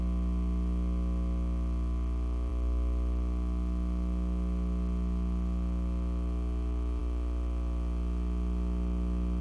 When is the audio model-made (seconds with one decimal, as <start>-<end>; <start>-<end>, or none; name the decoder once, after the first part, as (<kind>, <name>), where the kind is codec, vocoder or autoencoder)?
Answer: none